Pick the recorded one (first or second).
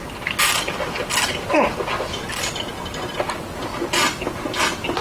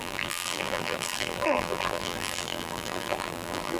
first